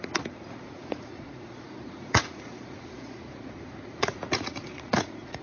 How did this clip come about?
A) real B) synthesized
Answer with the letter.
B